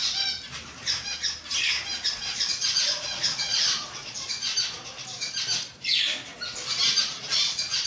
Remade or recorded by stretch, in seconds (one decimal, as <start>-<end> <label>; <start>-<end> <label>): 0.0-2.1 recorded; 2.1-4.5 remade; 4.5-5.7 recorded; 5.7-6.2 remade; 6.2-7.0 recorded; 7.0-7.9 remade